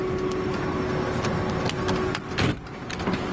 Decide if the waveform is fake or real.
real